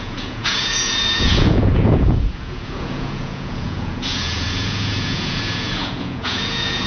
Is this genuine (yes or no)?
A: no